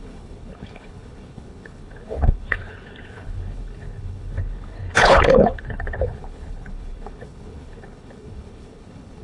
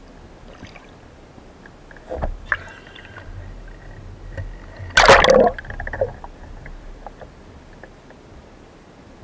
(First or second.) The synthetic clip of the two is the first